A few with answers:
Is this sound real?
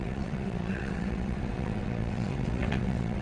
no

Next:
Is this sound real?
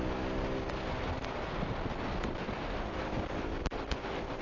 yes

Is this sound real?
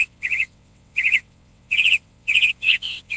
no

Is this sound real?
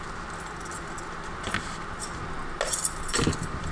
yes